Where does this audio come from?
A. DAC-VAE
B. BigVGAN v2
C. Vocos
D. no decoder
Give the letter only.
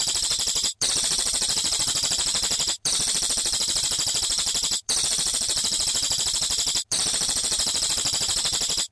B